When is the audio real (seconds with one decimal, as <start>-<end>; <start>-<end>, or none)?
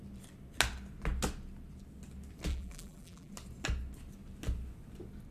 0.0-2.5; 3.3-5.3